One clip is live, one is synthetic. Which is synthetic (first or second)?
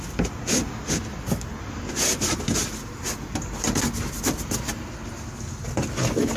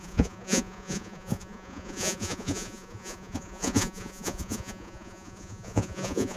second